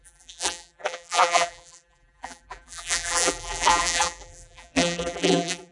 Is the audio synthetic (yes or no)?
yes